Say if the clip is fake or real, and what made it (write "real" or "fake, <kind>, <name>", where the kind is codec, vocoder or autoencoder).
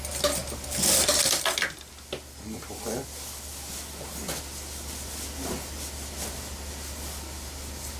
real